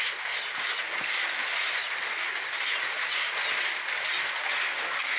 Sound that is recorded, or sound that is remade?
recorded